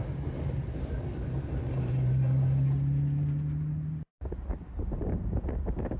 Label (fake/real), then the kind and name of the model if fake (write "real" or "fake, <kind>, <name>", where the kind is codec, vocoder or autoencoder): real